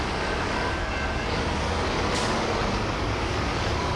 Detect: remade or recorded remade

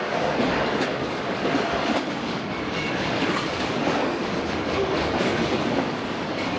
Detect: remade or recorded remade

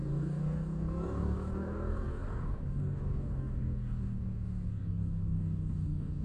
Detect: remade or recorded remade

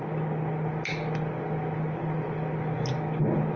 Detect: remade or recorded recorded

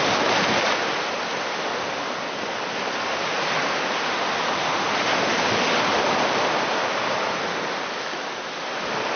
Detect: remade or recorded recorded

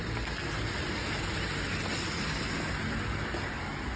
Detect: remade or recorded recorded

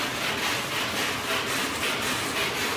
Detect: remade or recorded recorded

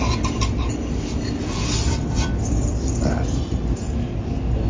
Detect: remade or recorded recorded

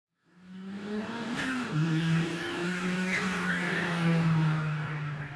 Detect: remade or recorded remade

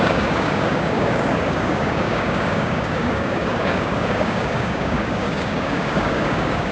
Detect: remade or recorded remade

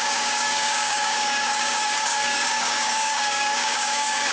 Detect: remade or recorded remade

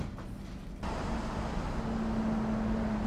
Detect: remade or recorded recorded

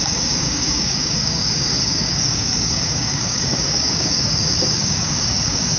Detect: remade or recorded remade